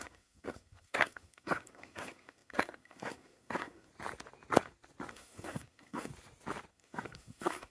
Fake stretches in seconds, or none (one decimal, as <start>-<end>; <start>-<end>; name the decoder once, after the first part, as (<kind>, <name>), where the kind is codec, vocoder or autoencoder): 0.0-3.9 (codec, SNAC); 5.1-6.1; 6.7-7.7

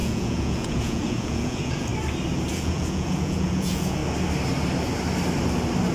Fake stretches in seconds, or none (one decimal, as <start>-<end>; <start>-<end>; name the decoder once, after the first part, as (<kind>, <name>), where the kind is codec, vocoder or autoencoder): 0.0-1.9 (vocoder, Vocos); 2.5-4.0

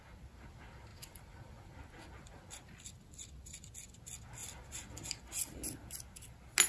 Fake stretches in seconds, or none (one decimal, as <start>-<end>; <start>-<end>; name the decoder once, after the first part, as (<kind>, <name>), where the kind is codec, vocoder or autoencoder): 0.9-3.7 (vocoder, BigVGAN v2)